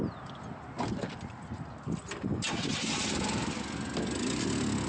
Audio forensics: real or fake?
real